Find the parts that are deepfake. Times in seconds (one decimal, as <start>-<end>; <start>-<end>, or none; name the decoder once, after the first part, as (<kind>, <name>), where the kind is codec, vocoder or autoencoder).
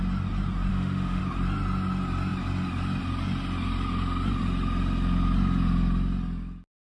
0.7-1.2 (autoencoder, DAC-VAE)